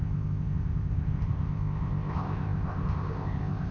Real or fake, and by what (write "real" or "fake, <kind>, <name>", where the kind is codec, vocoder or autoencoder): fake, codec, ZipCodec